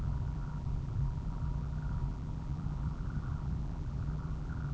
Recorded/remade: remade